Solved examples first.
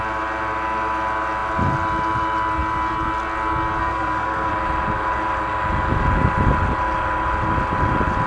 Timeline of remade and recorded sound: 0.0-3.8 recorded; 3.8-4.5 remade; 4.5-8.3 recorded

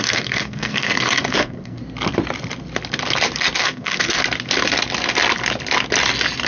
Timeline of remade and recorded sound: 0.0-1.8 remade; 1.8-3.6 recorded; 3.6-4.2 remade; 4.2-6.5 recorded

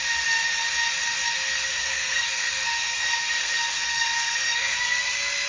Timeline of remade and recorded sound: 0.0-1.7 recorded; 1.7-5.0 remade; 5.0-5.5 recorded

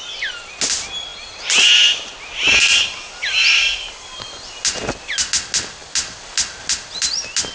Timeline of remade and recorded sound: 0.0-7.5 recorded

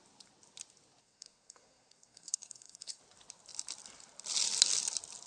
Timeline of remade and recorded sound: 0.0-1.0 recorded; 1.0-3.0 remade; 3.0-5.3 recorded

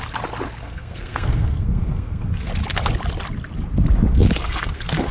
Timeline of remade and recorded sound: 0.0-0.6 recorded; 0.6-2.5 remade; 2.5-4.1 recorded; 4.1-5.1 remade